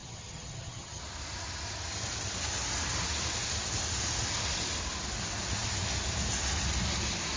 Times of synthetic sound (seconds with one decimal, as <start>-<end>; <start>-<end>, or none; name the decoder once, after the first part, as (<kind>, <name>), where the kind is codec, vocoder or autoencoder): 0.0-1.0 (vocoder, HiFi-GAN)